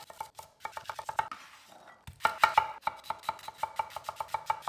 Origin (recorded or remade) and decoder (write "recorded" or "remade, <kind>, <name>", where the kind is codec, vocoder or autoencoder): recorded